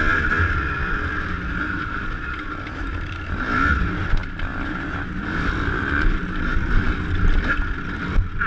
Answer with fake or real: real